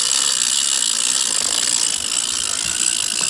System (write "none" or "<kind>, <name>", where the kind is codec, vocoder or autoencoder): none